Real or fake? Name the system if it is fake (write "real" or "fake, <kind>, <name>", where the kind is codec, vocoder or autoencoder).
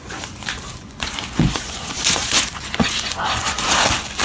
fake, vocoder, Vocos